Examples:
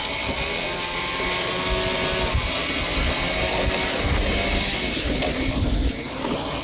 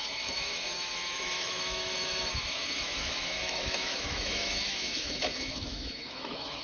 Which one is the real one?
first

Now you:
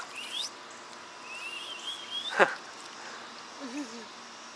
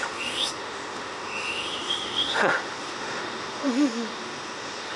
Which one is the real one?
first